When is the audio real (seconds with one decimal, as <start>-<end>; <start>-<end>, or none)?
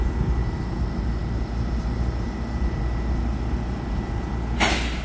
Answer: 0.0-5.0